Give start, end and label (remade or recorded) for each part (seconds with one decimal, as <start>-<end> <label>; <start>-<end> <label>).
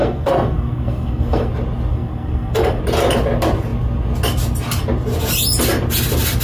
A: 0.0-1.5 remade; 1.5-1.9 recorded; 1.9-2.8 remade; 2.8-6.4 recorded